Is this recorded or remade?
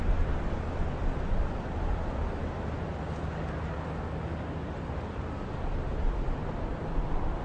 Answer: recorded